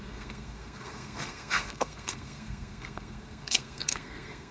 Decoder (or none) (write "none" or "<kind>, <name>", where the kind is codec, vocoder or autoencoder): codec, SNAC